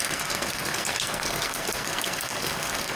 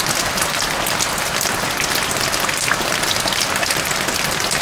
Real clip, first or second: second